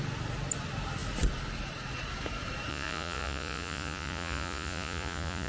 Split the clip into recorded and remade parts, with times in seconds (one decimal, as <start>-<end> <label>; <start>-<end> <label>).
0.0-2.7 recorded; 2.7-5.5 remade